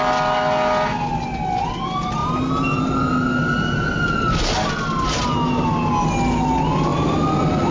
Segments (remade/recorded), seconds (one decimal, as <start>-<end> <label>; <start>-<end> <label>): 0.0-7.7 recorded